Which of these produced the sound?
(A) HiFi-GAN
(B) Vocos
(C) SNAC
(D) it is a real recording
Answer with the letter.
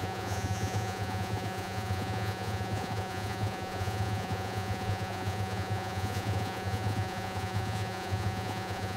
B